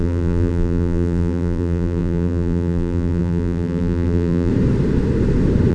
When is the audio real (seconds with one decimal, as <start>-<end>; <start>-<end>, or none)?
4.5-5.7